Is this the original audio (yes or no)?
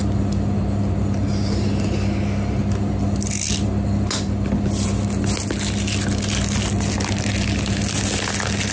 yes